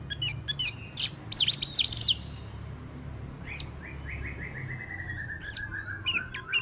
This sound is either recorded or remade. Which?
recorded